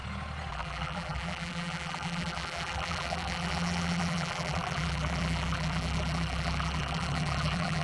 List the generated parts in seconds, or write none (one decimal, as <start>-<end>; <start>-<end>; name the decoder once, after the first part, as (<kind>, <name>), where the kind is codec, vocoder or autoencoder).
0.5-7.8 (vocoder, BigVGAN v2)

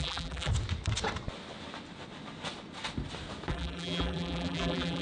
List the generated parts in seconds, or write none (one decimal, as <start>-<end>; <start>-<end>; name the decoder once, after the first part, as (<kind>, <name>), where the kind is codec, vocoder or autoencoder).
0.0-0.5 (vocoder, BigVGAN v2); 3.5-5.0

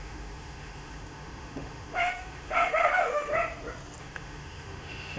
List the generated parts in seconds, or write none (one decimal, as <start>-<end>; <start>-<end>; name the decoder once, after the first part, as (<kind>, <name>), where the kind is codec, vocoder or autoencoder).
0.0-3.3 (autoencoder, DAC-VAE); 4.0-5.2

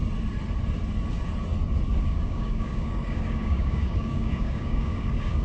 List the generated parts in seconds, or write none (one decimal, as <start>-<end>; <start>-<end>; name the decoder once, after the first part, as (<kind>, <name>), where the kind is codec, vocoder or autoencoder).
2.0-5.4 (codec, DAC)